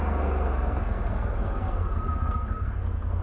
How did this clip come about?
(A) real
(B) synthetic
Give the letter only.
B